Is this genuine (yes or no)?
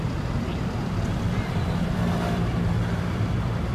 no